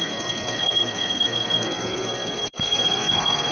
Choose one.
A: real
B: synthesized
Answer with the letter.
B